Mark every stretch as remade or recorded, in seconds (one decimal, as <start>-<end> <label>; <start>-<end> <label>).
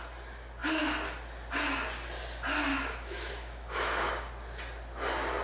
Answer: 0.0-2.7 recorded; 2.7-4.1 remade; 4.1-5.4 recorded